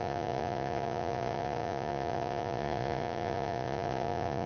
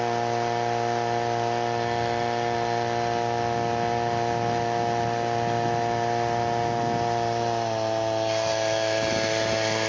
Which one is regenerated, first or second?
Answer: first